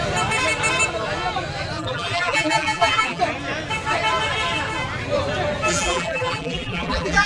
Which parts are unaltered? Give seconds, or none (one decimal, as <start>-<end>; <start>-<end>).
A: 0.0-1.8; 3.2-5.7